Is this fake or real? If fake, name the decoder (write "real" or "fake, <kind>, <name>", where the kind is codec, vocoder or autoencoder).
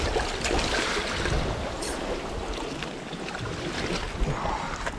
real